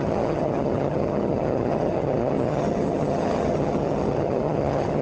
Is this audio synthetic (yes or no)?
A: yes